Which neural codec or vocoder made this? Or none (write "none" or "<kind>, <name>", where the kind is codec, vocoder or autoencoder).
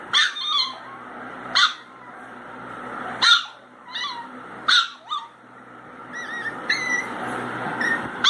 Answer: vocoder, BigVGAN v2